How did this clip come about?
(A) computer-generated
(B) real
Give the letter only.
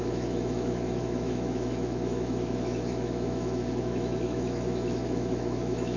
A